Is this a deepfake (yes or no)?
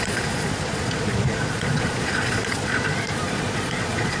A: yes